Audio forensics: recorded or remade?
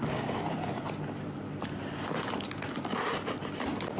recorded